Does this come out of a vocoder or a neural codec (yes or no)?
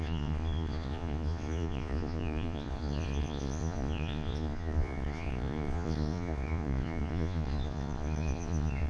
yes